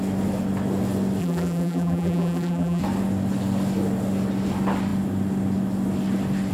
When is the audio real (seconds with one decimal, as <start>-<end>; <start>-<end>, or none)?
0.0-1.2; 2.8-6.5